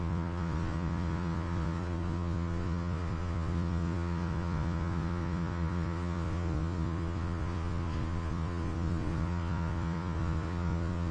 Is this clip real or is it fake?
fake